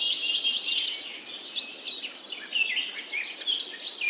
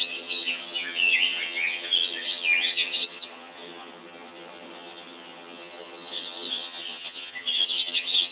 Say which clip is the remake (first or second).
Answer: second